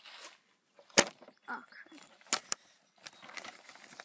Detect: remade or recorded recorded